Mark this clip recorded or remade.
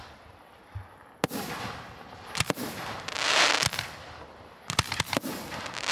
recorded